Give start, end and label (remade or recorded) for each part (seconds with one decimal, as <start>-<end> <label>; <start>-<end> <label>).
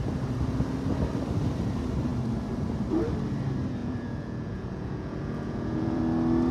0.0-3.8 recorded; 3.8-6.0 remade; 6.0-6.5 recorded